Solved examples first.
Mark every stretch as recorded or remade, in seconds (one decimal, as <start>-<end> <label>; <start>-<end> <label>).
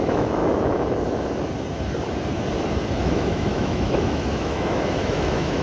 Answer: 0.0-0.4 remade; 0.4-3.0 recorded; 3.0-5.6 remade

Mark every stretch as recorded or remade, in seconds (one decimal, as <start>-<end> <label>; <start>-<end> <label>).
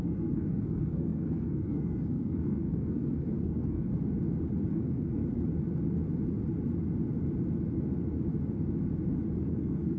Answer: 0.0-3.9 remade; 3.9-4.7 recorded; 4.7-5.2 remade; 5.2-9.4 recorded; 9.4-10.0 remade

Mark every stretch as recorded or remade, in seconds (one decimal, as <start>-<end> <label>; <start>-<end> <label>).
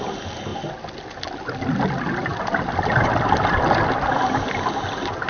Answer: 0.0-5.3 recorded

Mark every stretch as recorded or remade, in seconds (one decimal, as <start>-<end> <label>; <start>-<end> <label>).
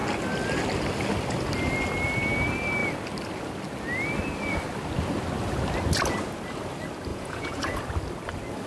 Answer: 0.0-7.1 recorded; 7.1-7.8 remade; 7.8-8.7 recorded